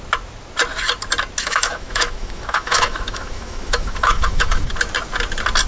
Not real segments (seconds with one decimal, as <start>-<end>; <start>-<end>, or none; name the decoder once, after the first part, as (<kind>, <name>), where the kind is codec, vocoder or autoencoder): 1.4-4.7 (autoencoder, DAC-VAE)